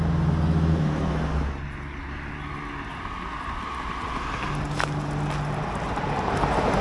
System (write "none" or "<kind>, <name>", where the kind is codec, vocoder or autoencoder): none